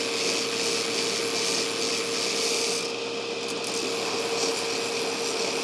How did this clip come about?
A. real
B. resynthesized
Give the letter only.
A